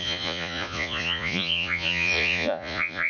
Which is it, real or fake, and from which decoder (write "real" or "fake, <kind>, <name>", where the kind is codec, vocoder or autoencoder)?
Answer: fake, vocoder, Vocos